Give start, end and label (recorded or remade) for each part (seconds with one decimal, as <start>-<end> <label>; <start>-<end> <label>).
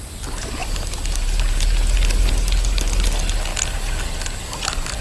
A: 0.0-5.0 recorded